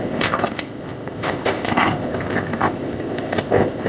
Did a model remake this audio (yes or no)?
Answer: yes